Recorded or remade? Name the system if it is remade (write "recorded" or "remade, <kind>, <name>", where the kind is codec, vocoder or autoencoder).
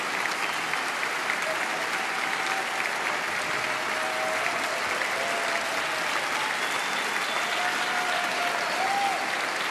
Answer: recorded